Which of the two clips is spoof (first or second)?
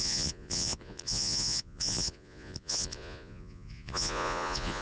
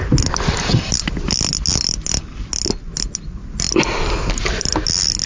first